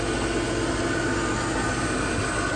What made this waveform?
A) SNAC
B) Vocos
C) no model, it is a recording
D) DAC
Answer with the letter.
C